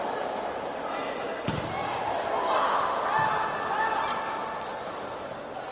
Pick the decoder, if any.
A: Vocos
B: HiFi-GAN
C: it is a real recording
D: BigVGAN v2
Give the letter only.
C